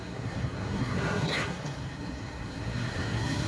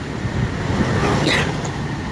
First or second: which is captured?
second